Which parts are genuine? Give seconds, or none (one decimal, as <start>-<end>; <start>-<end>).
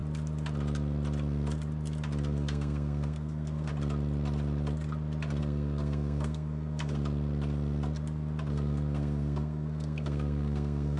0.0-2.2; 3.7-5.4; 7.0-8.5